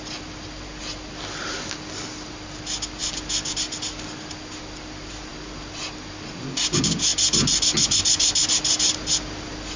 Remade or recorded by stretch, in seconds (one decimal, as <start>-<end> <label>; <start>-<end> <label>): 0.0-9.8 recorded